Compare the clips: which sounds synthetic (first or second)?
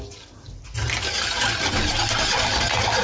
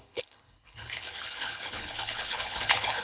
second